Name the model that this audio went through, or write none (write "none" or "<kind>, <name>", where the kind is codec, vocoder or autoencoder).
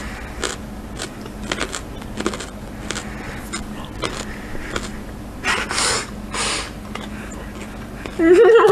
none